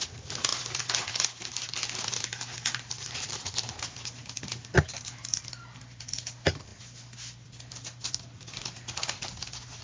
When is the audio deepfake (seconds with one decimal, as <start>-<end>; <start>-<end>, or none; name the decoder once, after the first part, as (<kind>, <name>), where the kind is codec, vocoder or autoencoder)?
none